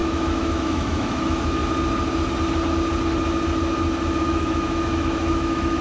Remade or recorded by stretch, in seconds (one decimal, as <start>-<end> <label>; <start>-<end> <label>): 0.0-1.6 remade; 1.6-4.2 recorded; 4.2-5.8 remade